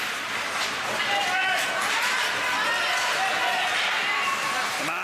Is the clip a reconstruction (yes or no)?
no